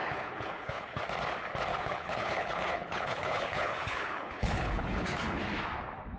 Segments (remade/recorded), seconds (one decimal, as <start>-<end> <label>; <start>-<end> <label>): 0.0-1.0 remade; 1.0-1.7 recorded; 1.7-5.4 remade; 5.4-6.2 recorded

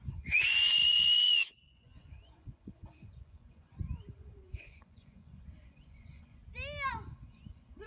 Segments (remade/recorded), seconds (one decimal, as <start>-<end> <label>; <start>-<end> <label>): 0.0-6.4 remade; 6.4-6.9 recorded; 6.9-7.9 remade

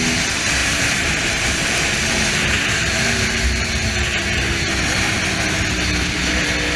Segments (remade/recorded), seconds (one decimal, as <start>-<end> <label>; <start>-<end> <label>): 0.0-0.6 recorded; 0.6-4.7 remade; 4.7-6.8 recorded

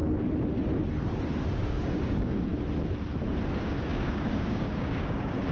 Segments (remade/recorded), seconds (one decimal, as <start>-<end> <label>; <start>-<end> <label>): 0.0-1.5 recorded; 1.5-2.5 remade; 2.5-3.5 recorded; 3.5-5.5 remade

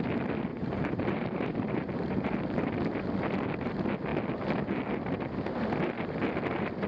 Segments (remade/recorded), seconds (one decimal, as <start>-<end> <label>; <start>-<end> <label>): 0.0-0.5 recorded; 0.5-2.3 remade; 2.3-6.9 recorded